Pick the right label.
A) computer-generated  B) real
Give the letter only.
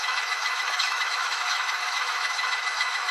A